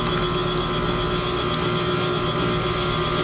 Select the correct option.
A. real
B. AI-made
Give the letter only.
A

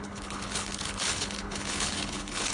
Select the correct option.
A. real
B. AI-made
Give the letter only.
B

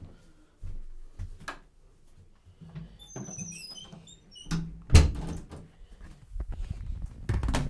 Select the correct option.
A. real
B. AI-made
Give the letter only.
A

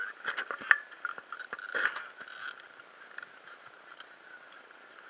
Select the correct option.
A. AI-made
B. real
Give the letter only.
B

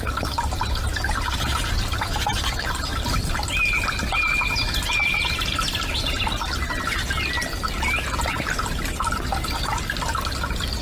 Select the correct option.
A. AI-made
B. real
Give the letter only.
B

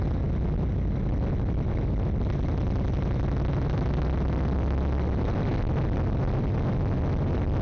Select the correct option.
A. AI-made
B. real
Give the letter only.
B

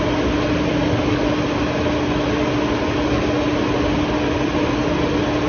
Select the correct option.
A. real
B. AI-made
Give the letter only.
A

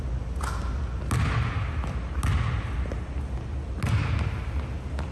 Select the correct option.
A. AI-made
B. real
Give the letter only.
B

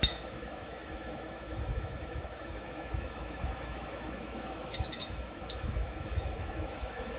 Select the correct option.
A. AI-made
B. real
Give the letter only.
A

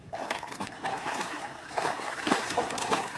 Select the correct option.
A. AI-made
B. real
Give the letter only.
A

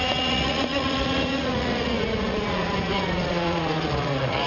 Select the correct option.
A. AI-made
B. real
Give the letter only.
A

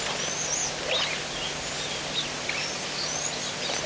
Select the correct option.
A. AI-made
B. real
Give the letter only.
B